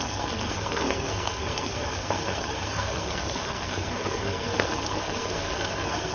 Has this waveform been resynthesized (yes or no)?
yes